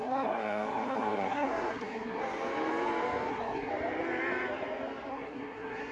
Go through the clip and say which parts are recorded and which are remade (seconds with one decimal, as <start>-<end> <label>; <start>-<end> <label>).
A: 0.0-2.2 remade; 2.2-3.3 recorded; 3.3-3.7 remade; 3.7-5.1 recorded; 5.1-5.9 remade